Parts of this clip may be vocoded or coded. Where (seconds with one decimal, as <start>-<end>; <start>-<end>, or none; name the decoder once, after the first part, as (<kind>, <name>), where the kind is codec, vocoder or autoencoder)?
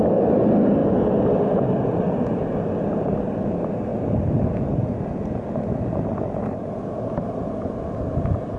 none